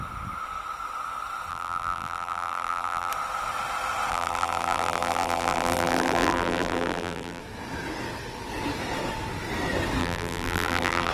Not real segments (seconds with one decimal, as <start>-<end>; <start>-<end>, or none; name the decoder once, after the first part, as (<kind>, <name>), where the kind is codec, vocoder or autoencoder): 1.5-3.1 (vocoder, BigVGAN v2); 4.1-7.4; 10.0-11.1